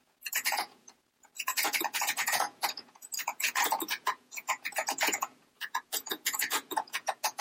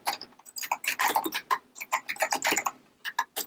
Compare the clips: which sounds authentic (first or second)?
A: second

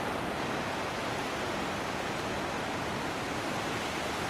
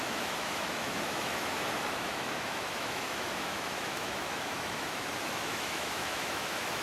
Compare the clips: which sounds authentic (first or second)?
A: first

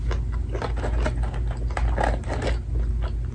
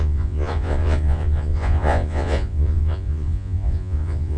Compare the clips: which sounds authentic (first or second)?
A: first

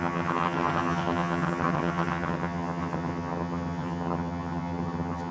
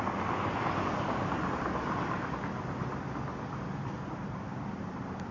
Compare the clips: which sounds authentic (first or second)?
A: second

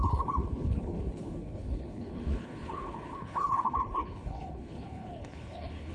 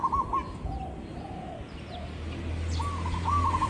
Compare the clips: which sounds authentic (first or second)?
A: second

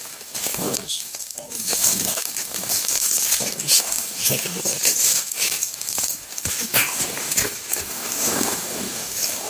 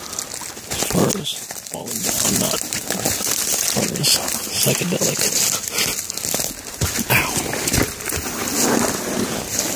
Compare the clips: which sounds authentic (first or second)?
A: second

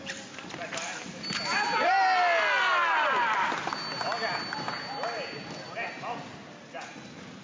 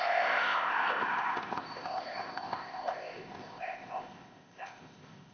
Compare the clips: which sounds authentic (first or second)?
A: first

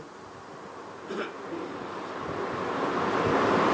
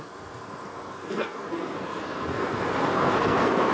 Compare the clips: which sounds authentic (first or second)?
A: first